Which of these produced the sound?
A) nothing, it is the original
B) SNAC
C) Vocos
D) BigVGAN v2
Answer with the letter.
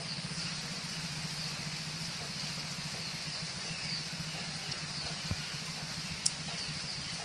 C